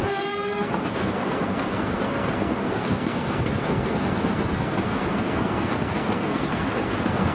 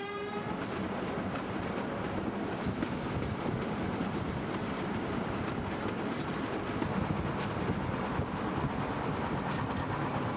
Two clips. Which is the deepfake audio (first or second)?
first